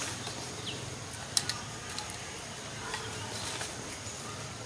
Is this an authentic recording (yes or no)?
yes